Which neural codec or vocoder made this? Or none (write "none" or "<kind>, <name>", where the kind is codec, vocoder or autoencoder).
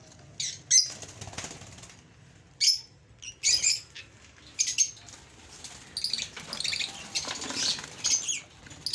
none